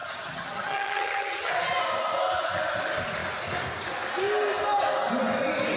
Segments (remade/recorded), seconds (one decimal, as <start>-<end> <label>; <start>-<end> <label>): 0.0-1.5 remade; 1.5-5.8 recorded